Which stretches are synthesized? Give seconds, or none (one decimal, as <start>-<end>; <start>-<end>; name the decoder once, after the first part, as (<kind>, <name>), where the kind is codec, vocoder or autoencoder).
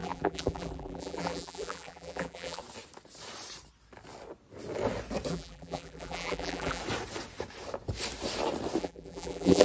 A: 0.0-2.6 (vocoder, BigVGAN v2); 5.3-6.8; 8.8-9.6